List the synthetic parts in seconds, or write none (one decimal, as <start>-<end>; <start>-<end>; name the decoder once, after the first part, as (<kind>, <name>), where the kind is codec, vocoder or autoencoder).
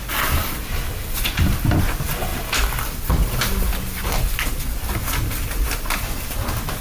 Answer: none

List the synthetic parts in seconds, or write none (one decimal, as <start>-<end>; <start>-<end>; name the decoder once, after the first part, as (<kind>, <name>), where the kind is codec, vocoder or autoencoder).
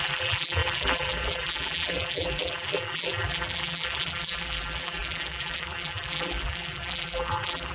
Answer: 0.0-7.7 (vocoder, BigVGAN v2)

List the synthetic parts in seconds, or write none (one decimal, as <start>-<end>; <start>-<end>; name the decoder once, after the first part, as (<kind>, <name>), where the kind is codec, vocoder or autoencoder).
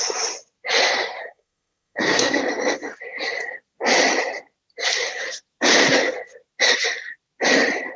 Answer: 1.2-2.4 (codec, SNAC)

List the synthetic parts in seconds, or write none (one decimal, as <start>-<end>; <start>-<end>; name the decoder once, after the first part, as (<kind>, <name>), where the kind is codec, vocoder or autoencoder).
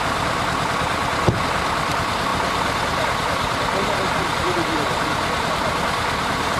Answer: none